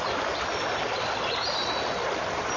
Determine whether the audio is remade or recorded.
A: recorded